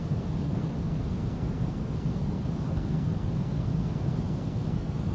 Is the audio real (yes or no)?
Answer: no